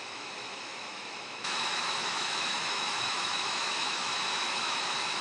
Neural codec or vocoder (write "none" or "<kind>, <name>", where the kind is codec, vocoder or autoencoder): autoencoder, DAC-VAE